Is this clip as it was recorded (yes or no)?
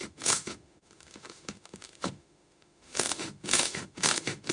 no